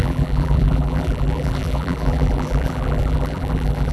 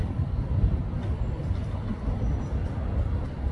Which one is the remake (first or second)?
first